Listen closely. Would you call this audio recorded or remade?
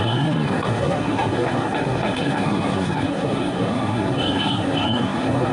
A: remade